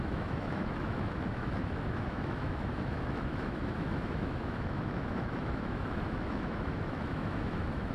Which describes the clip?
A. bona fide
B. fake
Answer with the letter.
B